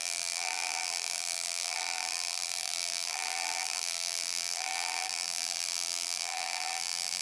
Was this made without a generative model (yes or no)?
no